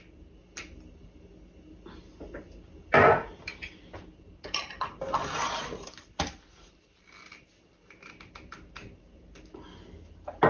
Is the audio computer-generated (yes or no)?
no